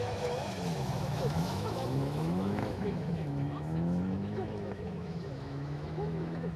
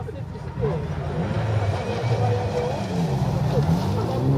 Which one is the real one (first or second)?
second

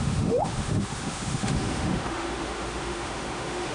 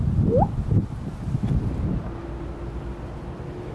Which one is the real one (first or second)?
second